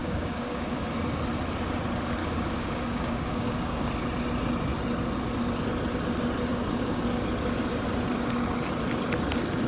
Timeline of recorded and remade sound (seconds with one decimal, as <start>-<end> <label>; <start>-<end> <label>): 0.0-0.8 remade; 0.8-2.2 recorded; 2.2-3.8 remade; 3.8-6.5 recorded; 6.5-7.0 remade; 7.0-9.7 recorded

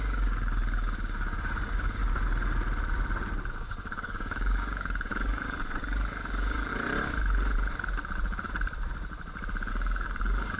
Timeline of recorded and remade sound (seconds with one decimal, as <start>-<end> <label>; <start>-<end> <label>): 0.0-2.0 remade; 2.0-3.5 recorded; 3.5-6.7 remade; 6.7-9.7 recorded; 9.7-10.6 remade

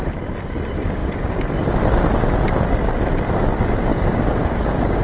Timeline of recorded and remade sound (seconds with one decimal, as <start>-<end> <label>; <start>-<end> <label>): 0.0-3.9 recorded; 3.9-5.0 remade

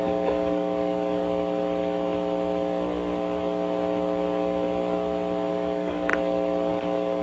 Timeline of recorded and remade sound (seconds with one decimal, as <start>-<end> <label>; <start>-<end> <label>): 0.0-1.2 remade; 1.2-5.5 recorded; 5.5-6.1 remade; 6.1-6.7 recorded; 6.7-7.2 remade